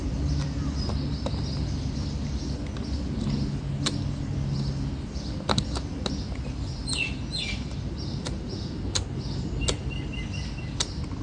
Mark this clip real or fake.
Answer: real